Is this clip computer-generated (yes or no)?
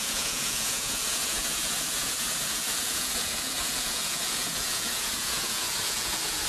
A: yes